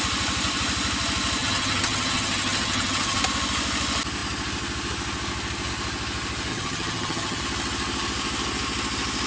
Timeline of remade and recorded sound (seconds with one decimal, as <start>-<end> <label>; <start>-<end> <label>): 0.0-1.4 recorded; 1.4-3.2 remade; 3.2-6.5 recorded; 6.5-7.4 remade; 7.4-9.3 recorded

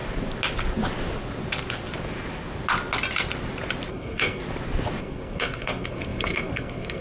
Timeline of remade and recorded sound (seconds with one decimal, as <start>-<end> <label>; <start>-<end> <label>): 0.0-3.9 recorded; 3.9-4.4 remade; 4.4-5.0 recorded; 5.0-7.0 remade